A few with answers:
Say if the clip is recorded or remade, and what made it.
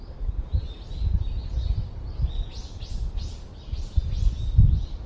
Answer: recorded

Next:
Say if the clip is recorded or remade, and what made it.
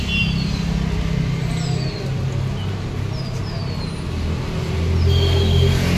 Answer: recorded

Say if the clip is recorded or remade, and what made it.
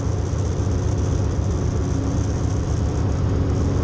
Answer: recorded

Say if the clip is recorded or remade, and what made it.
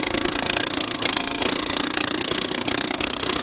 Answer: remade, codec, SNAC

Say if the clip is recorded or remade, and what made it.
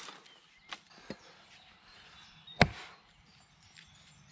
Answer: recorded